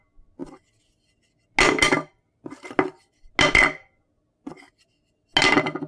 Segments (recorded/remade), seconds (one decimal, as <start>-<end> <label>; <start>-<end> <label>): 0.0-5.9 recorded